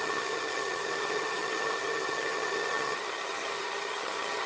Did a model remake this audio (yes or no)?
yes